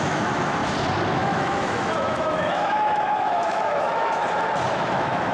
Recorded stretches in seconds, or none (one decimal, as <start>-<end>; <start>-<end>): 0.6-1.1; 4.2-4.7